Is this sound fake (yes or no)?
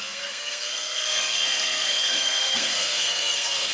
yes